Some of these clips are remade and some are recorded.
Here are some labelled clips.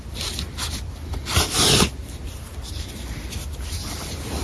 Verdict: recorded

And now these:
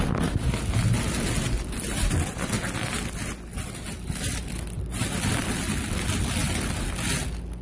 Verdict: recorded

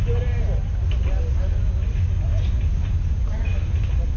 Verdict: recorded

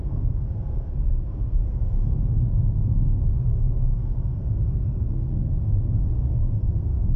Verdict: remade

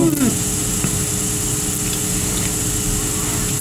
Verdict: recorded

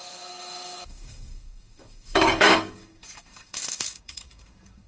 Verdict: remade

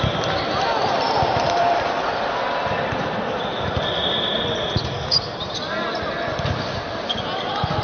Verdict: recorded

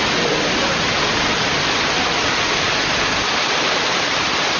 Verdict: recorded